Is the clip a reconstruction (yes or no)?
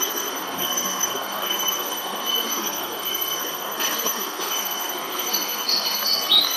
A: yes